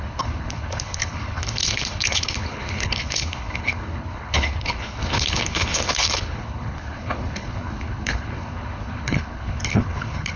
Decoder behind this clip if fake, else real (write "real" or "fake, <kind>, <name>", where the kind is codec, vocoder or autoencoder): fake, codec, HILCodec